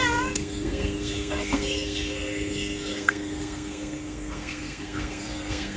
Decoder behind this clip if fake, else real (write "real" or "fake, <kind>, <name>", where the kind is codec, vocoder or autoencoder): fake, codec, SNAC